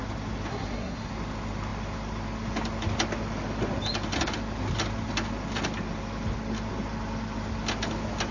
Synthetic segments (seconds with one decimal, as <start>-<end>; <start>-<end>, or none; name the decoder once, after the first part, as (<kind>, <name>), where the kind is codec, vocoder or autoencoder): 0.5-1.1 (codec, SNAC)